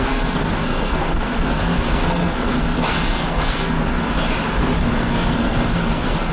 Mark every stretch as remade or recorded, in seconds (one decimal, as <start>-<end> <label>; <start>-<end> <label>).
0.0-4.0 remade; 4.0-4.8 recorded; 4.8-6.3 remade